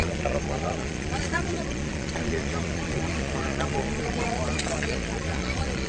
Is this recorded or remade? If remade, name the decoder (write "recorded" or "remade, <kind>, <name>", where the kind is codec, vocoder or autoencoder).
remade, vocoder, Vocos